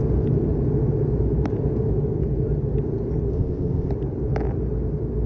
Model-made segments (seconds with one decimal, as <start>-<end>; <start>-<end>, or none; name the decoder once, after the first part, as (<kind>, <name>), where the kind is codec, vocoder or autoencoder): 3.3-3.9 (codec, ZipCodec)